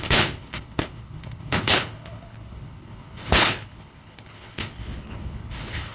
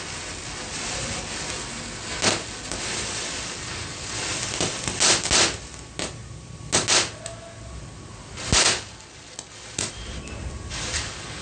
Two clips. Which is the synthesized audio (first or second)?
first